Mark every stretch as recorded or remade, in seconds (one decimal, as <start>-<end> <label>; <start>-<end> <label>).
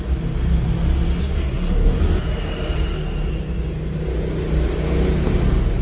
0.0-1.2 recorded; 1.2-2.0 remade; 2.0-5.8 recorded